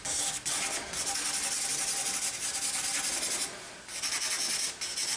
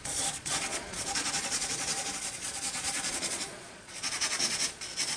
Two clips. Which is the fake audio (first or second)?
second